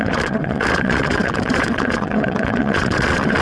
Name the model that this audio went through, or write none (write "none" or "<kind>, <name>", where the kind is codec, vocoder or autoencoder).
vocoder, WaveNeXt